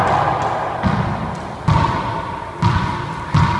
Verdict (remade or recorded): recorded